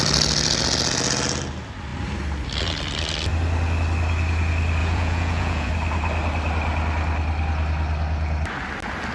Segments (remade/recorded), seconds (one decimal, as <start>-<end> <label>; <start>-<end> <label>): 0.0-4.8 recorded; 4.8-5.7 remade; 5.7-9.1 recorded